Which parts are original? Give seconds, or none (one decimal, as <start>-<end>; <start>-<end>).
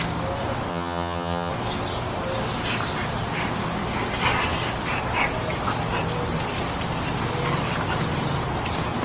0.0-0.7; 1.5-9.0